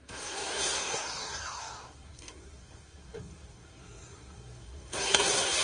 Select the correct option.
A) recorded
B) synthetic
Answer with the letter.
B